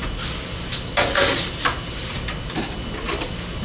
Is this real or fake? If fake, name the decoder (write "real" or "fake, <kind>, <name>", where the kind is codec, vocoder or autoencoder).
real